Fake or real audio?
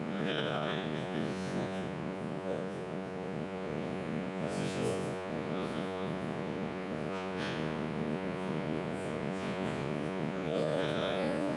fake